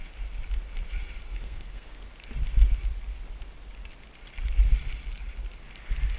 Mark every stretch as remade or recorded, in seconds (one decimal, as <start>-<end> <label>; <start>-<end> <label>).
0.0-1.3 recorded; 1.3-2.1 remade; 2.1-6.2 recorded